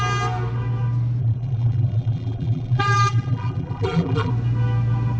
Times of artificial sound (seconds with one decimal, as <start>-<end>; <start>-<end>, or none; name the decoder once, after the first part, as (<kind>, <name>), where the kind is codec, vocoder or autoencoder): 1.2-4.3 (vocoder, BigVGAN v2)